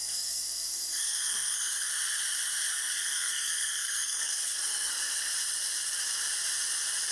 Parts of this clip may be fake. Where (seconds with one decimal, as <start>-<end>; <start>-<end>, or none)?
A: 0.0-1.9; 2.7-4.9